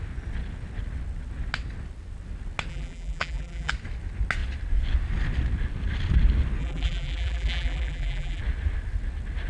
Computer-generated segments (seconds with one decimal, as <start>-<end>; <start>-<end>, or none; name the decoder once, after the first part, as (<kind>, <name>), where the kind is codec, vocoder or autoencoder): 2.7-3.7 (vocoder, BigVGAN v2); 6.6-8.4